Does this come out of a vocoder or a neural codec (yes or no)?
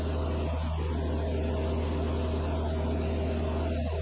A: no